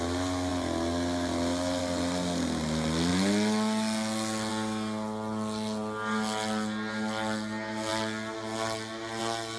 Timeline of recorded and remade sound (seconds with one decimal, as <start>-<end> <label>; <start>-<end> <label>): 0.0-9.6 recorded